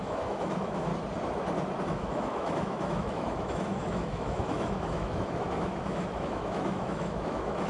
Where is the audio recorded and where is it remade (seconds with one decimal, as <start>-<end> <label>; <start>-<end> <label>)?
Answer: 0.0-0.9 remade; 0.9-1.8 recorded; 1.8-7.7 remade